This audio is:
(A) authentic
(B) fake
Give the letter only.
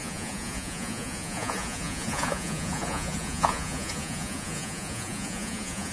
B